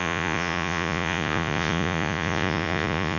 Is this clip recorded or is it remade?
remade